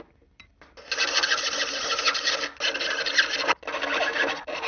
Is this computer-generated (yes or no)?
no